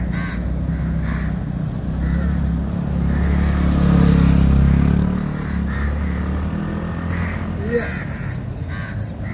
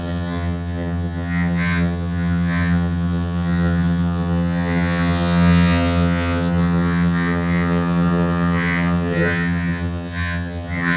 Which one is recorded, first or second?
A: first